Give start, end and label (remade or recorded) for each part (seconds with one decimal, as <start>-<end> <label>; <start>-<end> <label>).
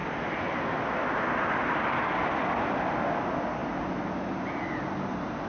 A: 0.0-5.5 recorded